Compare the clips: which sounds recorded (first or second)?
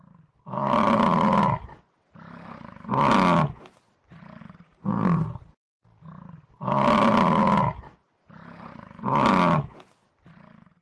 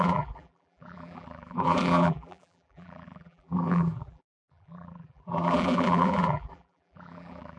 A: first